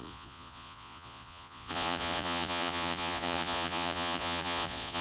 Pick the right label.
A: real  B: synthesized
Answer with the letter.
B